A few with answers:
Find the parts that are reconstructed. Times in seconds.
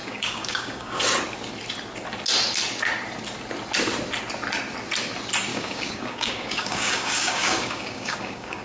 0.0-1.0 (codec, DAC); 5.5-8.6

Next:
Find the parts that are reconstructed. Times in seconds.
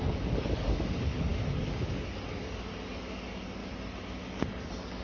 0.0-3.6 (codec, DAC); 4.5-5.0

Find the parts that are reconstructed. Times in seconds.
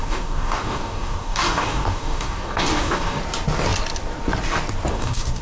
0.0-3.2 (codec, DAC); 4.9-5.4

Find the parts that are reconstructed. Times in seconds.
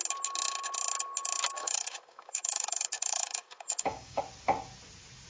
1.6-4.2 (codec, DAC)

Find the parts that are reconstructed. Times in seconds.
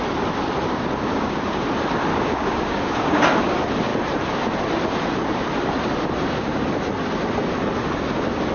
1.1-1.6 (codec, DAC); 2.1-3.2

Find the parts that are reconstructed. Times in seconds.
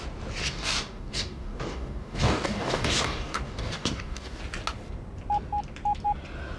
0.4-4.4 (codec, DAC)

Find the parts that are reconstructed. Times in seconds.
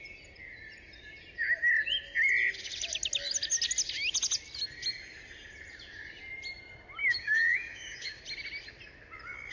7.0-8.2 (codec, DAC)